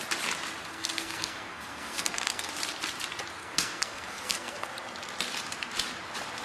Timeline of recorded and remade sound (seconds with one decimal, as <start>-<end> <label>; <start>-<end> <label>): 0.0-0.7 recorded; 0.7-2.5 remade; 2.5-3.4 recorded; 3.4-4.7 remade; 4.7-6.4 recorded